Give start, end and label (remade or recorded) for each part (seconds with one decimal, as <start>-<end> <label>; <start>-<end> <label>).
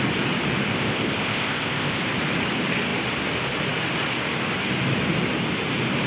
0.0-0.7 recorded; 0.7-2.0 remade; 2.0-6.1 recorded